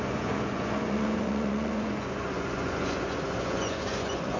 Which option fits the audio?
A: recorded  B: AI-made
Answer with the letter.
B